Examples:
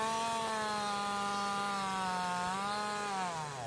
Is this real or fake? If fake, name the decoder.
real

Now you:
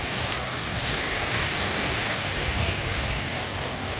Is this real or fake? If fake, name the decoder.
fake, codec, DAC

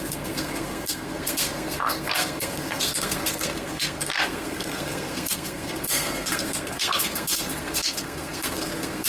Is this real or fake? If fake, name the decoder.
fake, codec, SNAC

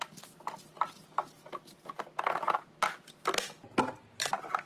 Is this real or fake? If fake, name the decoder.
real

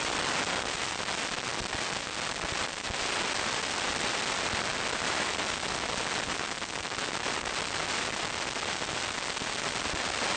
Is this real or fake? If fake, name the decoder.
real